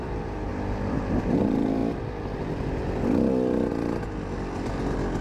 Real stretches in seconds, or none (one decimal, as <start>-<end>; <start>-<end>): 0.5-1.2; 1.8-5.2